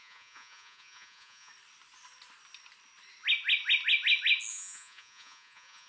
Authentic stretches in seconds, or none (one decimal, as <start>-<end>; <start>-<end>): 1.5-4.5